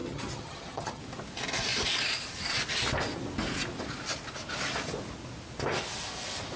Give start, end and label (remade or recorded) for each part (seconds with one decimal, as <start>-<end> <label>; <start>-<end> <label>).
0.0-1.0 remade; 1.0-6.6 recorded